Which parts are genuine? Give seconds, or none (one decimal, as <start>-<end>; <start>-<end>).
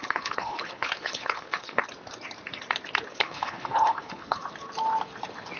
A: 1.8-3.1; 4.4-5.6